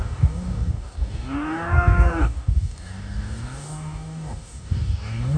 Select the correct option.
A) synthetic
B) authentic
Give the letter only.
A